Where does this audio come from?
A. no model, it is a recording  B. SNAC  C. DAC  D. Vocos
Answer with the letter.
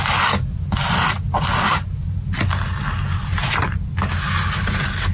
A